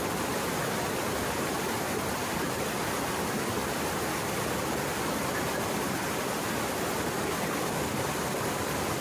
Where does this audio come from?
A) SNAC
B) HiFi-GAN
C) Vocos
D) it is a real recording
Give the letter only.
D